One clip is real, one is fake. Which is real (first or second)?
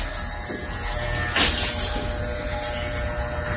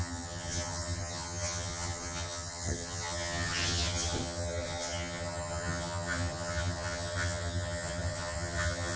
first